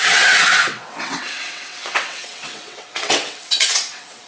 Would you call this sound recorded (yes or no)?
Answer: no